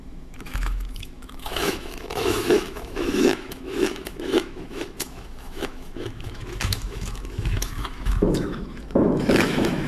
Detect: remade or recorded remade